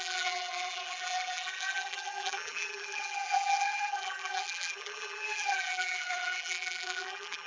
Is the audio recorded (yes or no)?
no